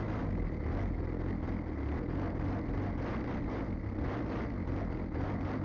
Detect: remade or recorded recorded